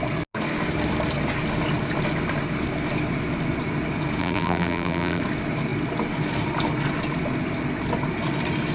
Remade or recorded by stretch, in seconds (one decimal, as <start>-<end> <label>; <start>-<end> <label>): 0.0-4.2 recorded; 4.2-5.2 remade; 5.2-8.7 recorded